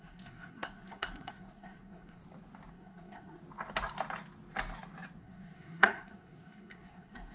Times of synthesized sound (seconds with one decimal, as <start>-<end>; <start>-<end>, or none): 0.0-2.2; 2.7-3.4; 5.2-7.3